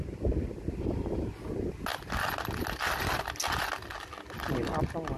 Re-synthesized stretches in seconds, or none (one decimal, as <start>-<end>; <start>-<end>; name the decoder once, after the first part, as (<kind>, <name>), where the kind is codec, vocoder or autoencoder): none